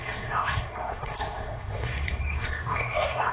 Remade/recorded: remade